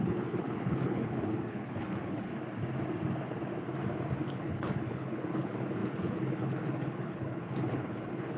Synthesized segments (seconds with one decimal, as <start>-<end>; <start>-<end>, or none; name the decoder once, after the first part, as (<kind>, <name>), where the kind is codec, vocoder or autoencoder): 0.0-2.3 (codec, HILCodec); 4.3-8.4

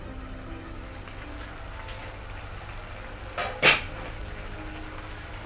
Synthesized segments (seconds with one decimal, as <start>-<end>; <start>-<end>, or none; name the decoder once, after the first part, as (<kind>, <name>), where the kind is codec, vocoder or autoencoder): none

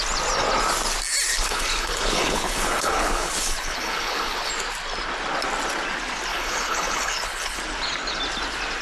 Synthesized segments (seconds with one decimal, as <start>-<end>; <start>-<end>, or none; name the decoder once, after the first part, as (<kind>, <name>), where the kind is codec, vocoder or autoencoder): 1.3-4.5 (codec, HILCodec); 6.3-7.6

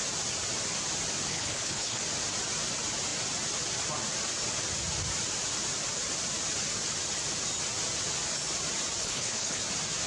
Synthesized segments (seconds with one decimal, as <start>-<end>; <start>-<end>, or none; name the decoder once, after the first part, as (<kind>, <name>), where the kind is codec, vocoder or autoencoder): 1.3-2.0 (codec, HILCodec); 9.0-9.6

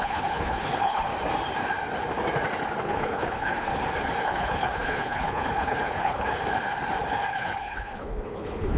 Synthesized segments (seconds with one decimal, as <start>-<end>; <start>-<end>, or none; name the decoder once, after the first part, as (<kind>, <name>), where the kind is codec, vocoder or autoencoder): 0.0-1.1 (codec, HILCodec); 2.8-3.7; 4.2-6.4; 7.3-8.8

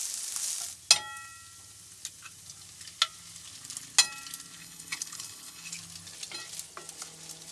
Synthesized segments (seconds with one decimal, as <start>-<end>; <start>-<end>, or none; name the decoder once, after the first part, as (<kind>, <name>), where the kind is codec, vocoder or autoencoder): 4.6-5.7 (codec, HILCodec)

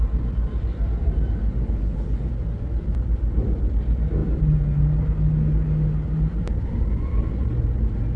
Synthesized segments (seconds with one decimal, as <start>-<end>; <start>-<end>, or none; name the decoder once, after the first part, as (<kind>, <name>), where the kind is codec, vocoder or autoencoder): 1.6-2.3 (codec, HILCodec)